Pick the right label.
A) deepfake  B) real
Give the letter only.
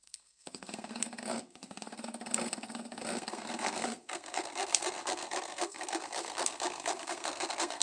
A